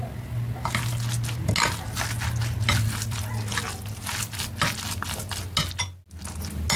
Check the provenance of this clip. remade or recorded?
recorded